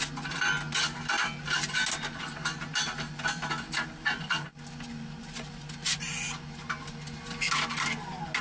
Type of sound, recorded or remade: recorded